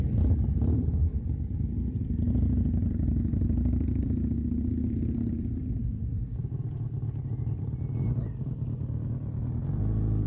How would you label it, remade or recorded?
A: remade